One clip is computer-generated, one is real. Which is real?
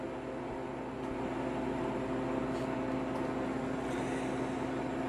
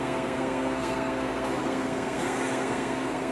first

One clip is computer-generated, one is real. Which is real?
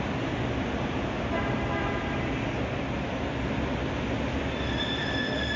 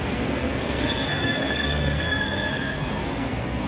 first